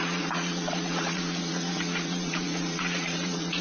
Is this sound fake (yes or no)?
yes